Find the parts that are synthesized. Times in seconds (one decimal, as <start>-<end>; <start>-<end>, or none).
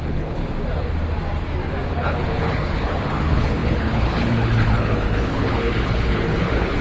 0.0-0.4; 1.9-6.8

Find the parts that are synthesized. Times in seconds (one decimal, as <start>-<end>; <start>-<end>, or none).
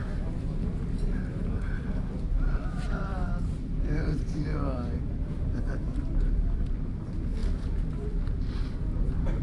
2.2-7.4; 7.9-9.4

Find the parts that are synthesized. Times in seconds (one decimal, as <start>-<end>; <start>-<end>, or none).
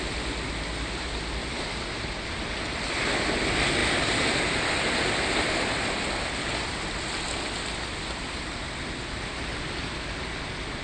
none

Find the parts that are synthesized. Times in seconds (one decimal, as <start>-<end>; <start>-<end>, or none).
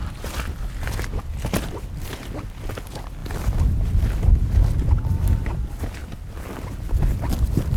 none